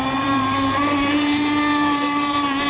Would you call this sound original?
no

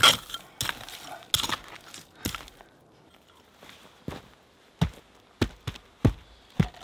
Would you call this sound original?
yes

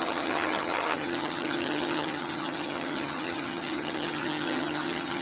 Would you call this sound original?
no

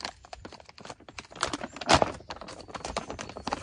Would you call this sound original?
yes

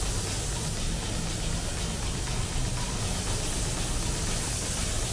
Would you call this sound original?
yes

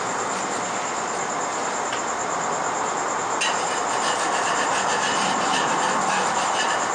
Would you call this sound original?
yes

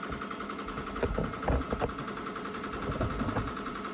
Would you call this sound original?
yes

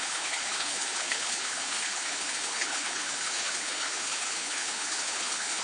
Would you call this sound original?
no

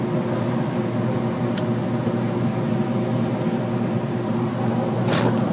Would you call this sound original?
yes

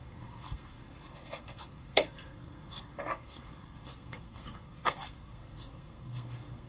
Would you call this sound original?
no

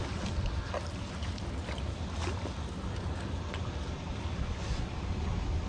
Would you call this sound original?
yes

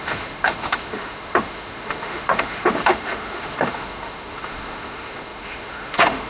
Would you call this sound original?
no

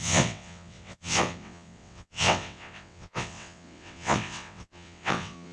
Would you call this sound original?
no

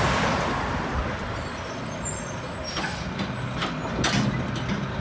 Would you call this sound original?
yes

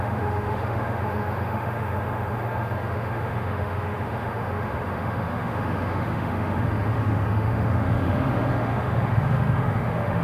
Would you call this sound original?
no